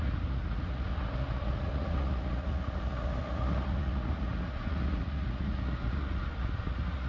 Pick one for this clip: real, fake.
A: fake